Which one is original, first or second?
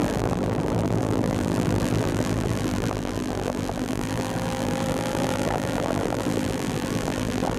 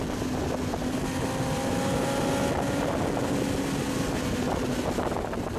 second